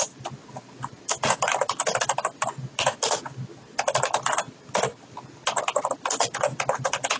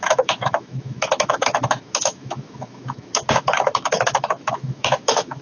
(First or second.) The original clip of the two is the first